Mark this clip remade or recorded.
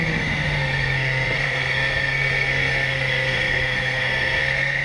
remade